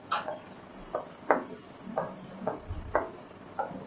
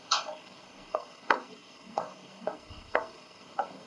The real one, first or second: first